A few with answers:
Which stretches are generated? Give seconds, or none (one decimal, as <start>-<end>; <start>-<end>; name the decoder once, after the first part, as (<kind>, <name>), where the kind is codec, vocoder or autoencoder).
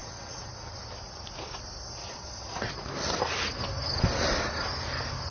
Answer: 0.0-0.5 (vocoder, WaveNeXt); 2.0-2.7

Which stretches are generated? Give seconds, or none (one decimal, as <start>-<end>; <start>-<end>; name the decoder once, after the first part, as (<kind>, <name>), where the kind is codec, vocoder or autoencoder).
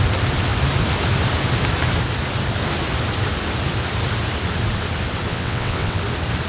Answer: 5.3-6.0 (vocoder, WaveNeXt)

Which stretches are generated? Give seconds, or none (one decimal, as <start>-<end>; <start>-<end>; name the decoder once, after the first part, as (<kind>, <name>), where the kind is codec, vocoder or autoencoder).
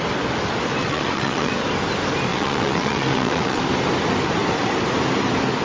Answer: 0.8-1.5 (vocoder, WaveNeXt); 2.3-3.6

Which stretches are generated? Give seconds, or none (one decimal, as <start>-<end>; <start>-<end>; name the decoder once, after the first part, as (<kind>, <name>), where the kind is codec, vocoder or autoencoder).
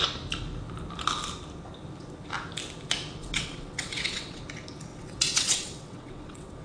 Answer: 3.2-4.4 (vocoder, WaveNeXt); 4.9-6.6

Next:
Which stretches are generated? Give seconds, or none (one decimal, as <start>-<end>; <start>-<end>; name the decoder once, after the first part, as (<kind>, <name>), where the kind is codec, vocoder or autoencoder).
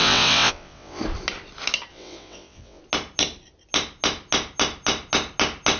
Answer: 0.0-1.0 (vocoder, WaveNeXt); 1.9-2.8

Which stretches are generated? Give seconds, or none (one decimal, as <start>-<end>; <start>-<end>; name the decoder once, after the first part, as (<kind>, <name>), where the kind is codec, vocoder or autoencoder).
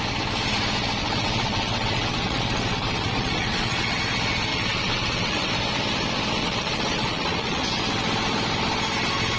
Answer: 1.0-4.0 (vocoder, WaveNeXt); 4.5-5.5; 6.4-7.8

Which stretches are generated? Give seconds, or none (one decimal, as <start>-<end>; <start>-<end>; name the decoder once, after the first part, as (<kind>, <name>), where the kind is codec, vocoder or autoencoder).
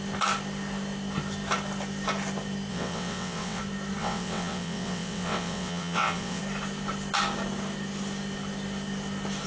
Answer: 2.7-3.6 (vocoder, WaveNeXt); 4.0-6.4